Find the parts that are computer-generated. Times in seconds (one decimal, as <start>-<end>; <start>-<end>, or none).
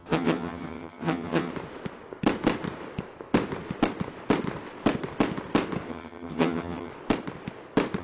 0.0-1.5; 5.9-6.9